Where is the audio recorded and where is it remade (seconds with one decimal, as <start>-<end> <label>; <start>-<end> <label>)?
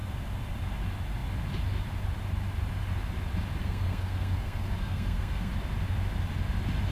0.0-3.6 recorded; 3.6-5.5 remade; 5.5-6.9 recorded